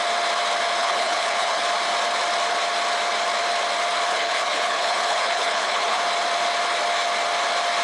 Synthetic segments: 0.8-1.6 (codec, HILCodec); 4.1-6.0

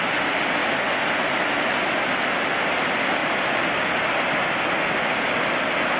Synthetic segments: none

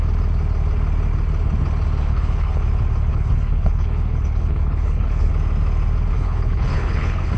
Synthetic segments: 2.1-2.6 (codec, HILCodec); 3.1-5.3; 6.1-7.4

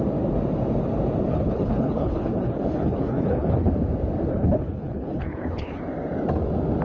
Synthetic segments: 1.3-3.7 (codec, HILCodec); 4.3-5.8

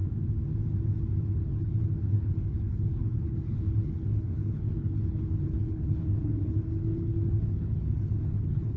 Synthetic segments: 1.3-8.8 (codec, HILCodec)

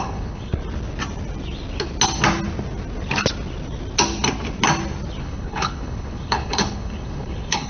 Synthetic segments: 0.0-0.6 (codec, HILCodec); 5.2-7.7

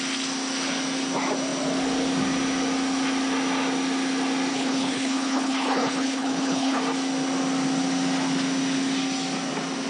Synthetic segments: 4.5-6.8 (codec, HILCodec)

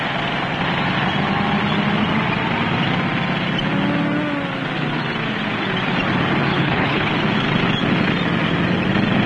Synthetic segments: 6.5-7.1 (codec, HILCodec)